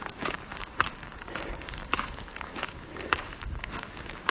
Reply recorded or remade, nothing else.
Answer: remade